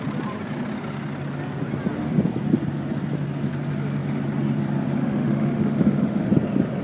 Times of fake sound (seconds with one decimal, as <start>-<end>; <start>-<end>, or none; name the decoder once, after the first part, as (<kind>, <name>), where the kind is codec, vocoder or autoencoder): 5.0-6.3 (autoencoder, DAC-VAE)